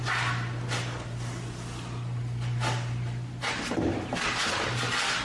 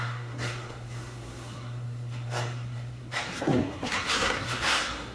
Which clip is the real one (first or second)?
first